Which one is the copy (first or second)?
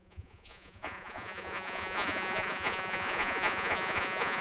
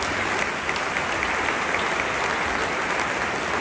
first